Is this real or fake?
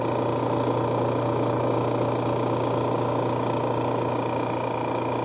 real